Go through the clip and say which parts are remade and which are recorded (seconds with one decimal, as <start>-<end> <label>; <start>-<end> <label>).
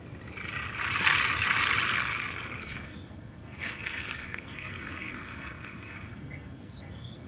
0.0-2.6 recorded; 2.6-7.3 remade